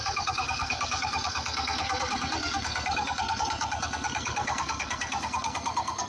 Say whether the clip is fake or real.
fake